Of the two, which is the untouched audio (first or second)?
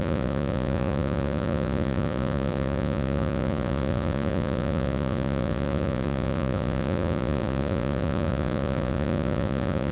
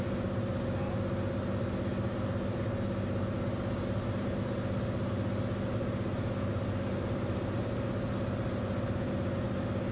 second